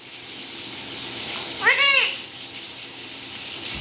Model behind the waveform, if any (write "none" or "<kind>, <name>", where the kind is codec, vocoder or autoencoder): none